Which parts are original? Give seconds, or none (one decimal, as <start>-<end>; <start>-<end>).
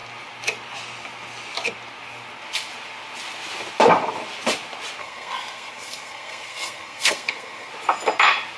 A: 0.0-5.0; 7.7-8.6